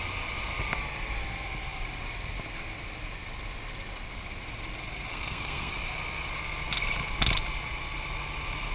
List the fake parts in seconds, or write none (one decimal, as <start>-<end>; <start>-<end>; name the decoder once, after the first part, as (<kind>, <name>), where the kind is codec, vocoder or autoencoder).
5.1-5.7 (codec, SNAC)